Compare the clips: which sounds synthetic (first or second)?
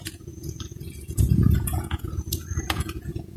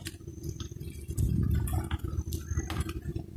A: first